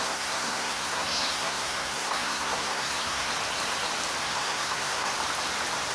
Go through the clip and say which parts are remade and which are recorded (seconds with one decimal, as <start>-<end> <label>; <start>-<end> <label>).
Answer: 0.0-3.3 remade; 3.3-4.2 recorded; 4.2-5.1 remade; 5.1-5.9 recorded